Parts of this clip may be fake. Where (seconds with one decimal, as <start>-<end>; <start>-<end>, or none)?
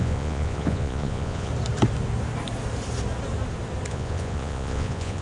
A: 0.0-1.5; 3.9-5.2